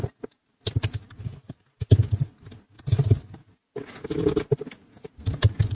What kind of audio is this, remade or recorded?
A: recorded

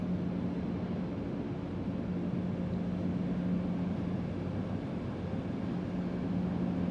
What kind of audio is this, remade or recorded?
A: recorded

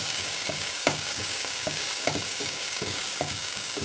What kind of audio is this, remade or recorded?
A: remade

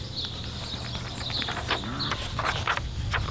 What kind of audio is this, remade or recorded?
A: recorded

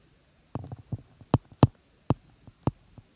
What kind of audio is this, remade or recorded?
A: recorded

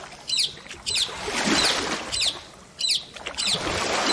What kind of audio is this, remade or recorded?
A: recorded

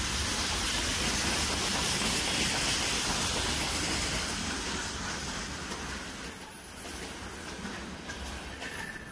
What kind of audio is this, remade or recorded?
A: recorded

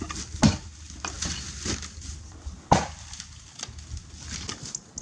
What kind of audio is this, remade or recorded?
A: recorded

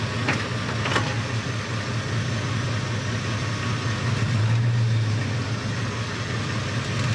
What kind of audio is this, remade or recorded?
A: recorded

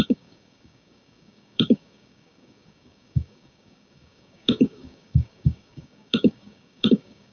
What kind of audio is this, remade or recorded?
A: remade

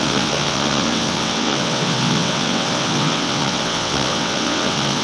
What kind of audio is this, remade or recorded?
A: remade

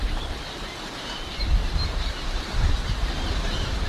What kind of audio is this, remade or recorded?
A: remade